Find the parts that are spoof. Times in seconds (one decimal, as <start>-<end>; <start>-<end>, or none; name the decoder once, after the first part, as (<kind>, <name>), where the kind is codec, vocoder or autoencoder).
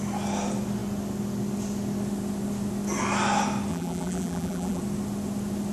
3.7-4.8 (vocoder, BigVGAN v2)